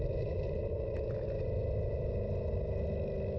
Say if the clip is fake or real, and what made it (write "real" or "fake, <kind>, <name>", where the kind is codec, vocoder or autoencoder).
real